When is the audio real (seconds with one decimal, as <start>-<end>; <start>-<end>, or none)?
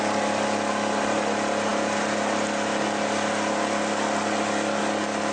0.0-5.3